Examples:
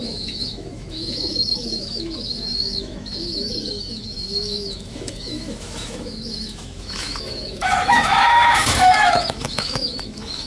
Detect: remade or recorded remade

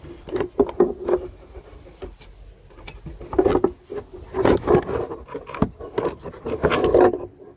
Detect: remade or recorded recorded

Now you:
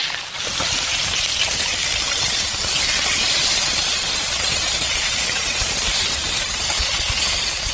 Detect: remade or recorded recorded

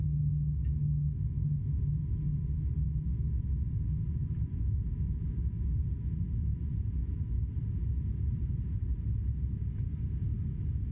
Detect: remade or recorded recorded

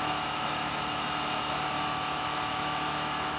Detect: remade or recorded remade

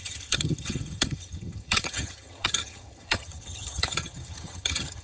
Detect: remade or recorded remade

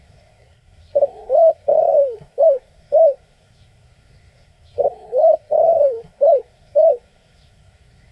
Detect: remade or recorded remade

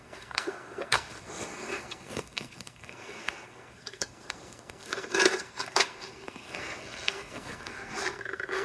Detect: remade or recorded remade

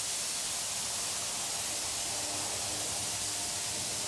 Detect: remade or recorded recorded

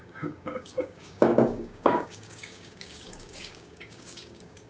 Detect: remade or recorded remade